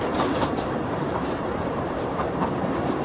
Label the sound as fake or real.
fake